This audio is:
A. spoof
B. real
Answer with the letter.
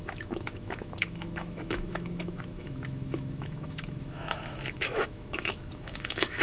A